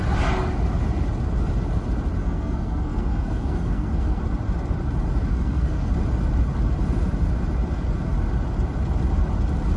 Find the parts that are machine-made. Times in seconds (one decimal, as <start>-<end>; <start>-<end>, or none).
2.2-4.2; 5.3-5.9